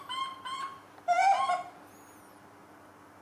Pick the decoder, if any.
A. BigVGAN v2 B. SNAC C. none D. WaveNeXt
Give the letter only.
C